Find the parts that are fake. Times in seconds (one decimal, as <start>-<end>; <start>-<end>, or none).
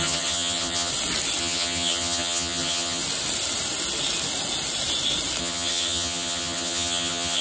0.0-0.9; 1.4-3.0; 5.4-7.4